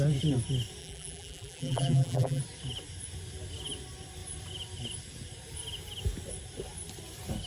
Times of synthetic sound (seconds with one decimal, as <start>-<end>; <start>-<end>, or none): 0.8-2.4